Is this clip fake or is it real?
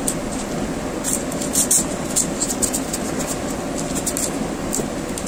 real